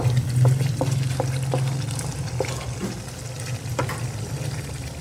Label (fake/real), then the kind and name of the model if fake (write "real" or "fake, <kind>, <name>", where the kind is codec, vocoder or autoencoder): real